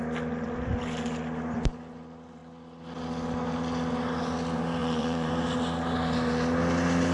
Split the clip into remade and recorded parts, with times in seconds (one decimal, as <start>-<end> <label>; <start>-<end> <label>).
0.0-4.8 recorded; 4.8-5.3 remade; 5.3-7.1 recorded